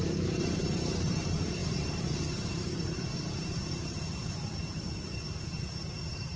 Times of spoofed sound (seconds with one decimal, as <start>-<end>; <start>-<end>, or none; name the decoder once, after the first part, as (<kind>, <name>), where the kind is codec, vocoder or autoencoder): 0.0-6.4 (vocoder, BigVGAN v2)